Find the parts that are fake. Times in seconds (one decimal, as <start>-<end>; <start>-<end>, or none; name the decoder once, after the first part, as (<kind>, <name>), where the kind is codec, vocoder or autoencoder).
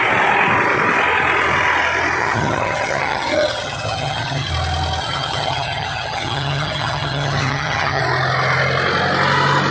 2.2-4.5 (vocoder, HiFi-GAN); 5.0-8.0